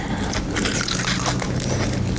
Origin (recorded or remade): recorded